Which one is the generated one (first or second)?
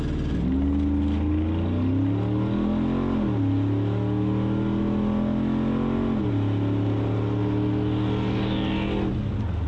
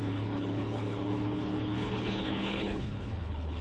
second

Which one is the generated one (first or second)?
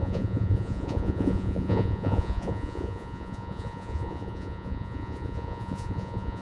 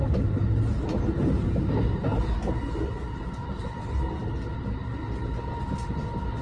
first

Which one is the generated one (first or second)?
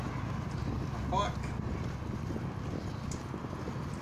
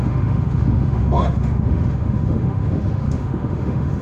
second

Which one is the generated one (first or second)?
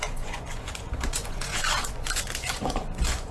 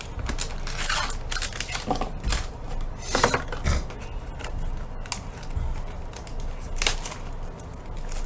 first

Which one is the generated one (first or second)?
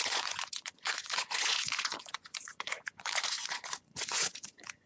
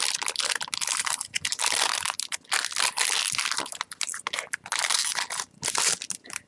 first